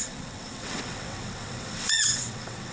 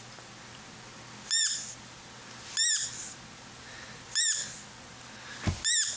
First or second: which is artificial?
first